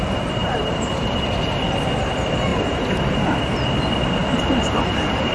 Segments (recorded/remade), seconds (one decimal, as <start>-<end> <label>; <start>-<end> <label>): 0.0-0.4 recorded; 0.4-1.3 remade; 1.3-4.2 recorded; 4.2-5.3 remade